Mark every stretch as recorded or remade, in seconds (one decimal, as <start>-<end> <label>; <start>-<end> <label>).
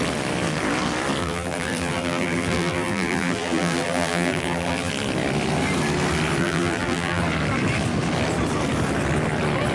0.0-1.2 recorded; 1.2-4.9 remade; 4.9-6.4 recorded; 6.4-7.2 remade; 7.2-9.7 recorded